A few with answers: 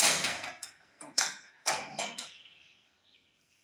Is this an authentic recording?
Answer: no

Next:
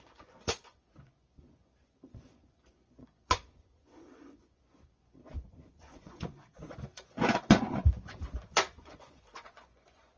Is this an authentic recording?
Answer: no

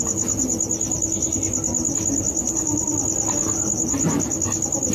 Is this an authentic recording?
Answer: yes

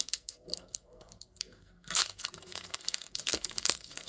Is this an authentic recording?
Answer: no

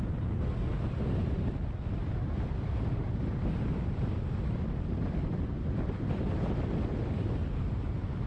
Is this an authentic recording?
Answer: yes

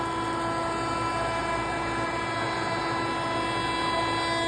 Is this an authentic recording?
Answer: yes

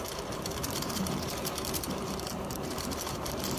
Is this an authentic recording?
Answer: no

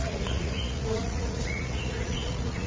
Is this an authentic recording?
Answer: no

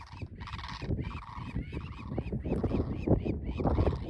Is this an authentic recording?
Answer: yes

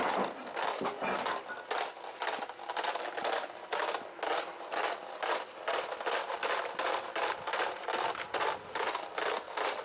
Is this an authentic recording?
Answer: yes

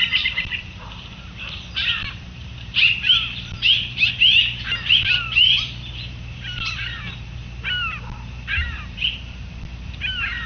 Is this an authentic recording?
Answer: no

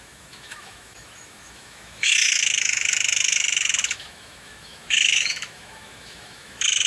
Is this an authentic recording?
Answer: no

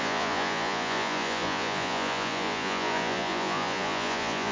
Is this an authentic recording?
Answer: no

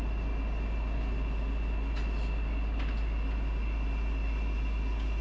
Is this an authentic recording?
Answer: yes